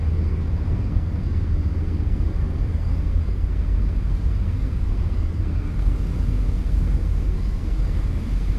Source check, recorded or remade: remade